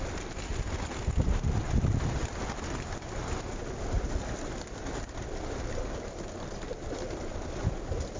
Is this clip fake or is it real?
real